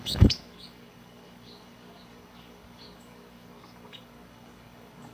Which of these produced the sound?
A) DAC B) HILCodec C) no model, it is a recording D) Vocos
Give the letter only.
A